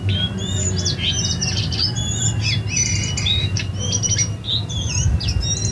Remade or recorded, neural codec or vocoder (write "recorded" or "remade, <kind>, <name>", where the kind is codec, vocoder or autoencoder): recorded